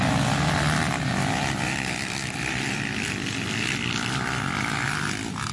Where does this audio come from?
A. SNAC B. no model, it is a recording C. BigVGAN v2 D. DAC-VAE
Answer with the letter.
B